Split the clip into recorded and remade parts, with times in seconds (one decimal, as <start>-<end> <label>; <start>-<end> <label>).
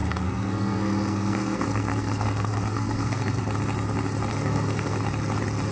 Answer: 0.0-3.4 remade; 3.4-4.3 recorded; 4.3-5.0 remade; 5.0-5.7 recorded